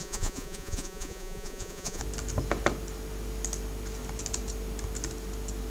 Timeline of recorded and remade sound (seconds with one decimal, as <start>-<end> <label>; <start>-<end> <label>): 0.0-2.0 remade; 2.0-5.7 recorded